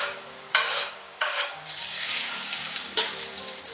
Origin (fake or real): fake